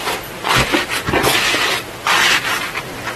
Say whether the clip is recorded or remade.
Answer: recorded